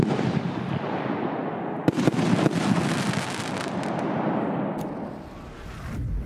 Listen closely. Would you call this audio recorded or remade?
recorded